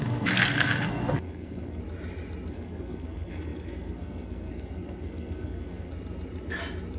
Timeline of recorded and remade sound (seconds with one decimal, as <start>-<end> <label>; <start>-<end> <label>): 0.0-1.8 remade; 1.8-2.5 recorded; 2.5-5.9 remade; 5.9-7.0 recorded